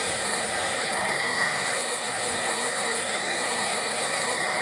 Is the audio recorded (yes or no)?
no